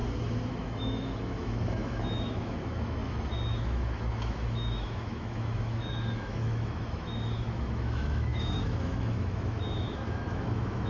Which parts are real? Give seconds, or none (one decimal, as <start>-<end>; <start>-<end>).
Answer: 0.0-0.5